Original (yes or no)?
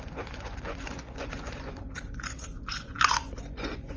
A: no